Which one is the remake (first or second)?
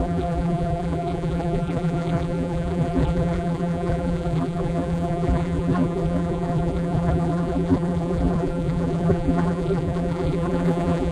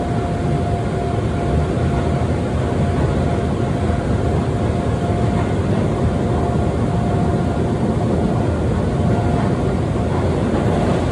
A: first